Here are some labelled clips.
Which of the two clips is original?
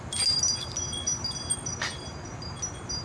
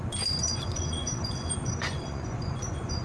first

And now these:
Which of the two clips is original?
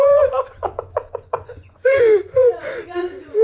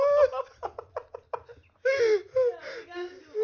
second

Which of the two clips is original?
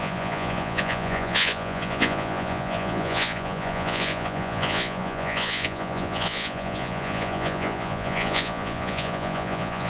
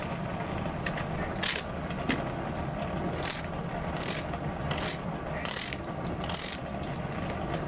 second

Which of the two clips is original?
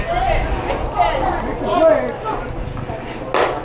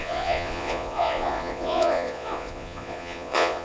first